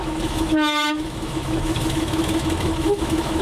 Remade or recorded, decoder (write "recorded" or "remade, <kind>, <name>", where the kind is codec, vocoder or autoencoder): remade, autoencoder, DAC-VAE